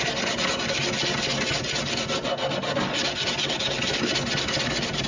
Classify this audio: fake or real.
real